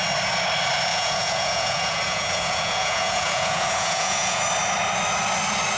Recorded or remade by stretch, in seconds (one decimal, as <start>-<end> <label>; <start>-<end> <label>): 0.0-0.9 recorded; 0.9-4.4 remade; 4.4-5.8 recorded